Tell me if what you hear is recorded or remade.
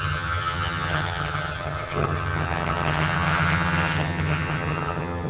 remade